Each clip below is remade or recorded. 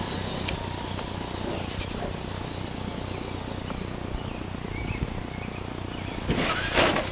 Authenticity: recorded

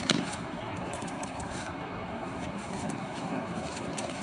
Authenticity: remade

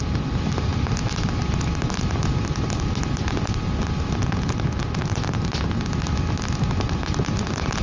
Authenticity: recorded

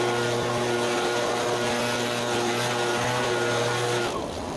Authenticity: recorded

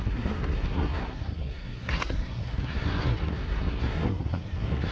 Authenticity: remade